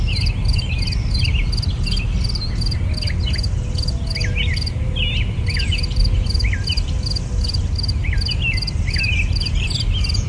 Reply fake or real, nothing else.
real